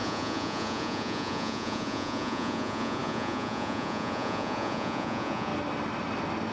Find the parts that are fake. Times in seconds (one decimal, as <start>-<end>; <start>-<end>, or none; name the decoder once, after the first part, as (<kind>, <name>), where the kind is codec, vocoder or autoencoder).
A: 0.0-5.5 (vocoder, Vocos)